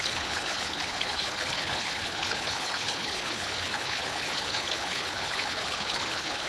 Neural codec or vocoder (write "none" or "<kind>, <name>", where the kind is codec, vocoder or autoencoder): codec, HILCodec